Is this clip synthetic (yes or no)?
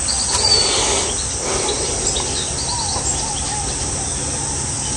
no